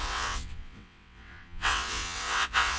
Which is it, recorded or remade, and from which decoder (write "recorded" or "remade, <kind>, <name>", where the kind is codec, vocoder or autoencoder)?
remade, vocoder, WaveNeXt